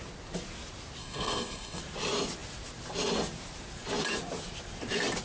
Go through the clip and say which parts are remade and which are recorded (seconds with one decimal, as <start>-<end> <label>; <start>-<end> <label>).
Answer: 0.0-1.0 recorded; 1.0-1.8 remade; 1.8-5.2 recorded